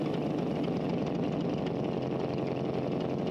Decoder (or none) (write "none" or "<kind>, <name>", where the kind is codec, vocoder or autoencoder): none